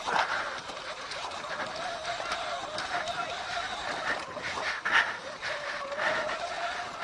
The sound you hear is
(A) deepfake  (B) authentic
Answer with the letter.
B